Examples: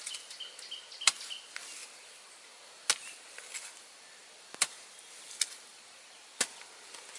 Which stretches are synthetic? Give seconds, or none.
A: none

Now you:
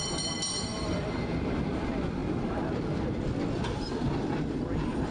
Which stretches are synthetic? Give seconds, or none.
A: 0.7-1.5

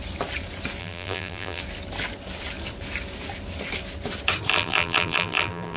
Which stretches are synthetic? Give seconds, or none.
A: 0.8-1.6; 4.5-5.8